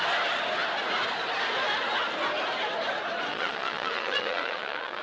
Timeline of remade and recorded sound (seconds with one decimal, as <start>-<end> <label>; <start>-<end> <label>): 0.0-3.3 recorded; 3.3-5.0 remade